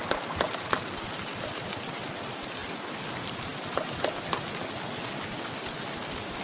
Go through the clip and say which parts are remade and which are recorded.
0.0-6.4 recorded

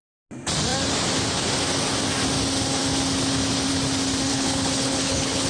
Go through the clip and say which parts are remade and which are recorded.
0.0-4.3 recorded; 4.3-5.5 remade

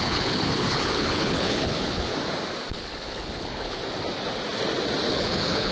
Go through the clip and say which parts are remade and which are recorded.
0.0-2.1 remade; 2.1-2.7 recorded; 2.7-3.8 remade; 3.8-5.1 recorded; 5.1-5.7 remade

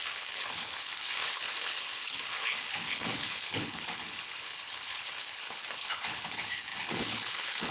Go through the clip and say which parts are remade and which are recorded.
0.0-7.7 remade